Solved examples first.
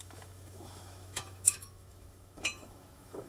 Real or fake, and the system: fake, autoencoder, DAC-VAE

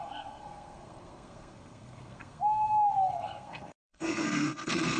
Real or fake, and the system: fake, codec, SNAC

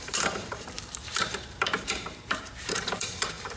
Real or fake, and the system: fake, vocoder, BigVGAN v2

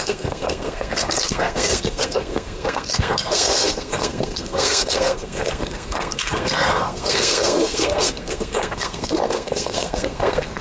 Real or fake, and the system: fake, codec, SNAC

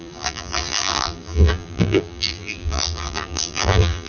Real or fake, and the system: fake, vocoder, BigVGAN v2